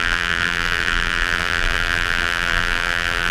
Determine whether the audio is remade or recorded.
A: remade